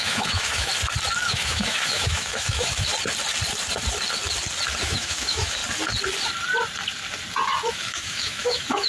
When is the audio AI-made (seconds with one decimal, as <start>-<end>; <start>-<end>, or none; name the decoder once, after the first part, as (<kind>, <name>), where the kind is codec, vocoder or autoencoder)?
0.0-0.7 (autoencoder, DAC-VAE); 1.3-2.9; 4.8-5.6; 7.7-8.9